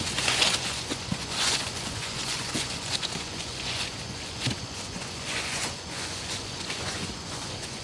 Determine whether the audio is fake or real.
fake